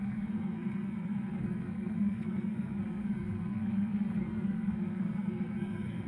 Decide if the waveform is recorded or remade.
remade